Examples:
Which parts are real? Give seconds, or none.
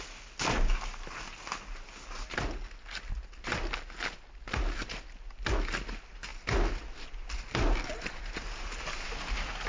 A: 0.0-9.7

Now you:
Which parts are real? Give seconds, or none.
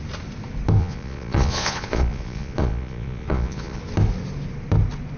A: 0.0-0.8; 3.8-5.2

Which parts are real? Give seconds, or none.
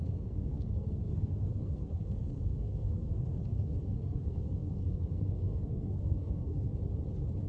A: 6.7-7.5